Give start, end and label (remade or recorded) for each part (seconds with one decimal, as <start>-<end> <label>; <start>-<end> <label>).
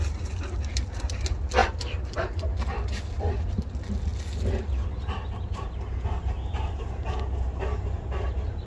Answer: 0.0-1.6 recorded; 1.6-2.4 remade; 2.4-8.7 recorded